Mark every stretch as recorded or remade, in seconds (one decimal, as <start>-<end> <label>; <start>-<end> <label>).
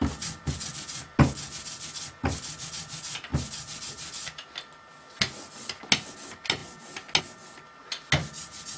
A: 0.0-8.8 recorded